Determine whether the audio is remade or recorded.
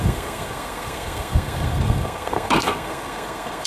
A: remade